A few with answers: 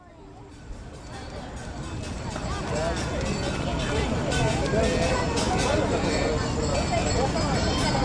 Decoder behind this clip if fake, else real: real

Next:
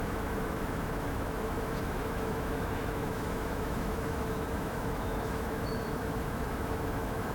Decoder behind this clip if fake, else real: fake, autoencoder, DAC-VAE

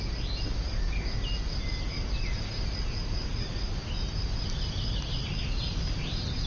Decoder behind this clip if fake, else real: real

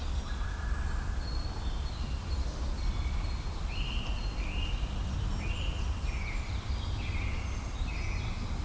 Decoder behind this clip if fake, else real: real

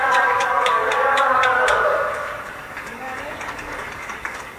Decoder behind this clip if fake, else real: fake, codec, DAC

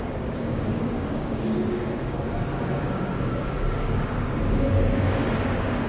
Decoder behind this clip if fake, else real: fake, codec, DAC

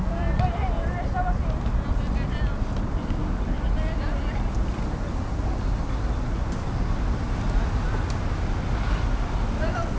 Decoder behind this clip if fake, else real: real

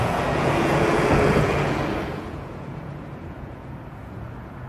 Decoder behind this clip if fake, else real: fake, vocoder, Vocos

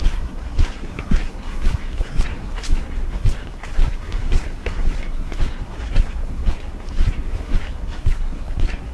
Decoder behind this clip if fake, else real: fake, codec, SNAC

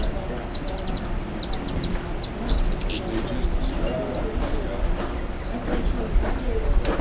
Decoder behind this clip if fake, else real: real